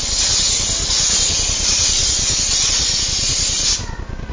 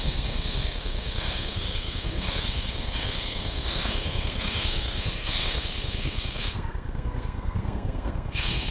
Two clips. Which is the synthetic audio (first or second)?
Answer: second